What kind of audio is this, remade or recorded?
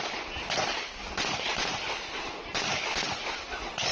recorded